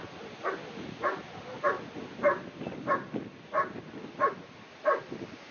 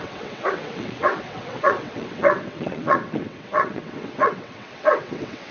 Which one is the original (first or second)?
first